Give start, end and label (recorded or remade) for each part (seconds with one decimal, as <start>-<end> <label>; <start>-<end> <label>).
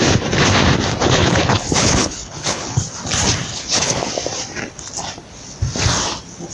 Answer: 0.0-1.0 recorded; 1.0-2.8 remade; 2.8-3.5 recorded; 3.5-4.1 remade; 4.1-6.5 recorded